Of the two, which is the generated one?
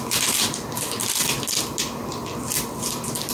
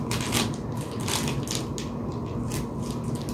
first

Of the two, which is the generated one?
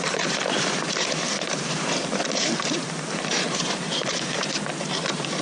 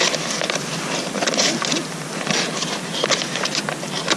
first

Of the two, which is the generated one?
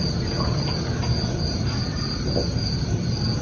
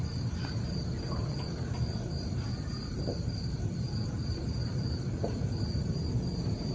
second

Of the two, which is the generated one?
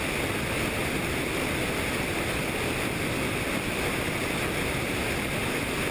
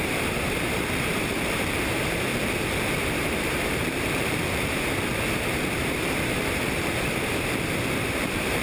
second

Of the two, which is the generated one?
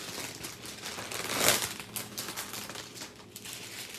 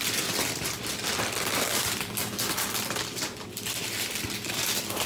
second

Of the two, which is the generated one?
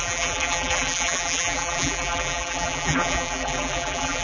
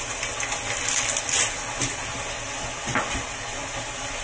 first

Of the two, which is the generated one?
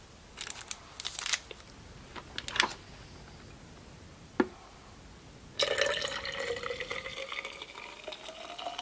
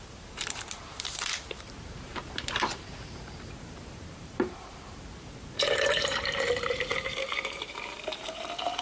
second